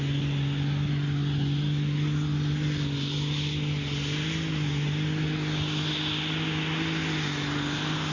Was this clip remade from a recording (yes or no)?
no